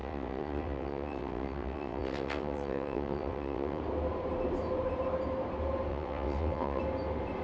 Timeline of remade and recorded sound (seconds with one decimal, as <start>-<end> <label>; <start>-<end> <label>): 0.0-3.8 remade; 3.8-5.9 recorded; 5.9-6.8 remade; 6.8-7.4 recorded